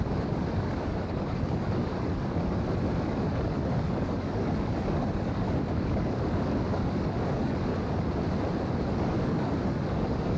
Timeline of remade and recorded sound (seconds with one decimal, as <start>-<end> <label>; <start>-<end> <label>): 0.0-7.7 remade; 7.7-8.7 recorded; 8.7-10.4 remade

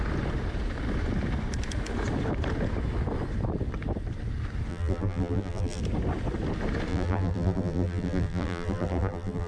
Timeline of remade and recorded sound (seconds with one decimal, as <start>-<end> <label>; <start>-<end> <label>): 0.0-4.7 recorded; 4.7-5.8 remade; 5.8-6.9 recorded; 6.9-9.5 remade

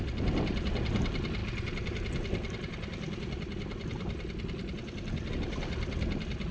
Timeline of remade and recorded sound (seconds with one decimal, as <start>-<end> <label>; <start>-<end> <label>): 0.0-6.5 recorded